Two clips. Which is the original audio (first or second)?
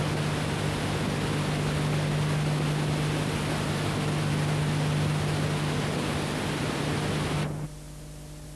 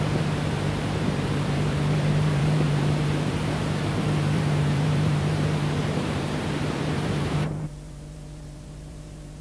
first